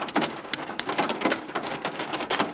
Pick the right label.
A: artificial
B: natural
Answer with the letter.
A